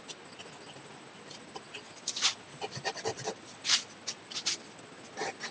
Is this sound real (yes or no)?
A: yes